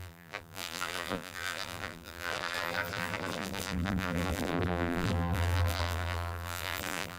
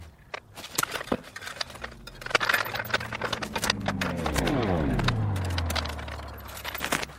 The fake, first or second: first